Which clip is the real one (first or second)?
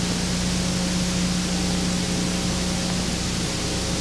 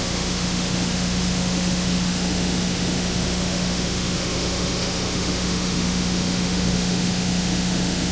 first